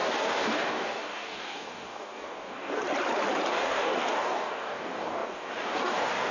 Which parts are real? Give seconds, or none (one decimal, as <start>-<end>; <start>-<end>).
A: 2.8-3.5